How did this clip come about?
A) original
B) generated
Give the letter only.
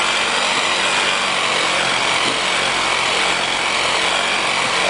A